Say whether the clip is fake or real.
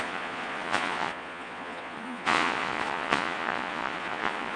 fake